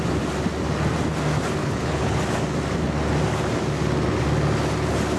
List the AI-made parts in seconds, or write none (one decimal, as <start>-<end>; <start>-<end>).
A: 1.6-2.2